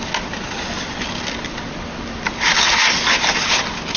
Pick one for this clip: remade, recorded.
recorded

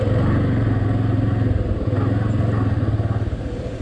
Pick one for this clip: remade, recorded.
recorded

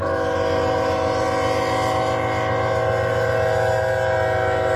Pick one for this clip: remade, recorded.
recorded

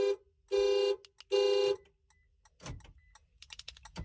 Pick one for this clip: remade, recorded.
recorded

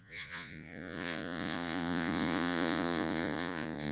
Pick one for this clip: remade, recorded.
remade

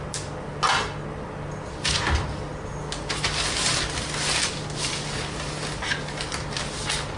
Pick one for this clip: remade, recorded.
recorded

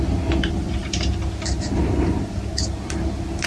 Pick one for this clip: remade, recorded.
recorded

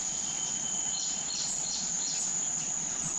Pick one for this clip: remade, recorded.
remade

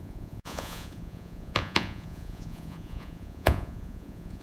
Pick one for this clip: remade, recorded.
remade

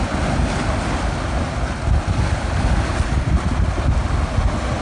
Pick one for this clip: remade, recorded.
recorded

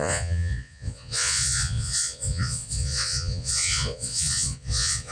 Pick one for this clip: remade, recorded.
remade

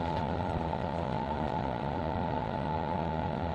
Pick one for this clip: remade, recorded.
remade